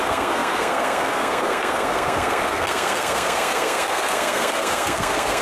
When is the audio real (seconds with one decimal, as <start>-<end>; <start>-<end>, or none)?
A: none